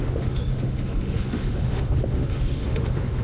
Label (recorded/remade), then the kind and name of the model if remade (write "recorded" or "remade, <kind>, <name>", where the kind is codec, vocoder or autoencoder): remade, autoencoder, DAC-VAE